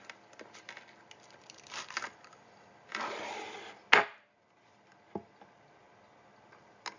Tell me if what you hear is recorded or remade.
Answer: recorded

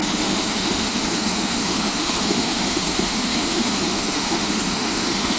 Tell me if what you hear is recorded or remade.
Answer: remade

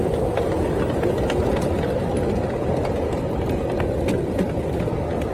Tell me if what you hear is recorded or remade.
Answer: recorded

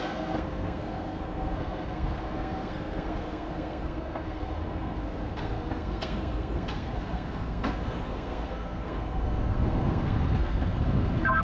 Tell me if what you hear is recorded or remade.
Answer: remade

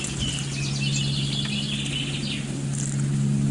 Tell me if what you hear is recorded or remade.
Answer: recorded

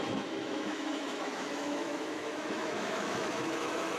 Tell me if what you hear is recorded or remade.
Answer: remade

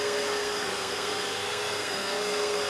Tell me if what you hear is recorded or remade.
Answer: remade